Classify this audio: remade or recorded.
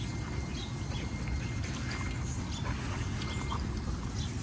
recorded